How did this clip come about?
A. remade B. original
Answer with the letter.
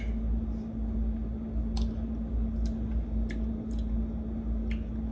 B